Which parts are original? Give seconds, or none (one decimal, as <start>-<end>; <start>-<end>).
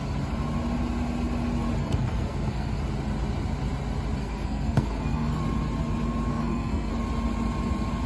0.0-1.8; 2.8-4.2; 5.4-6.3; 6.9-8.1